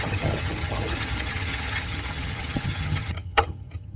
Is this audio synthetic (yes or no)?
yes